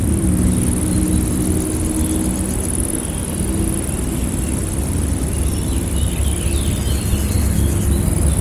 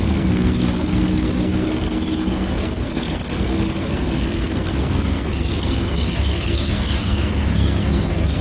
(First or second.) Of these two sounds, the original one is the first